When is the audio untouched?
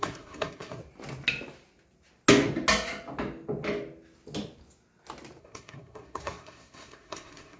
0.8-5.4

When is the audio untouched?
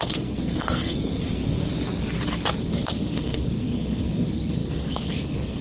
1.7-2.6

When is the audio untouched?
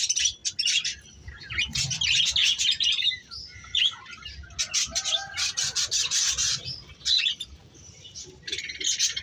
0.0-2.4; 3.9-6.4; 6.9-7.6